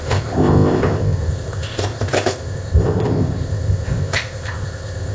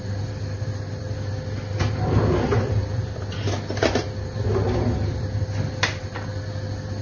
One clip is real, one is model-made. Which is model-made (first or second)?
first